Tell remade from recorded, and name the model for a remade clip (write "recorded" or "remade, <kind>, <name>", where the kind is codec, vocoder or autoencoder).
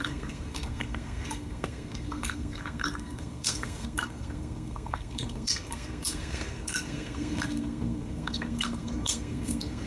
remade, codec, SNAC